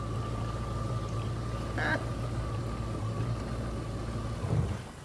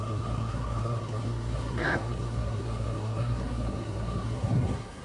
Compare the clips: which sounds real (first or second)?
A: first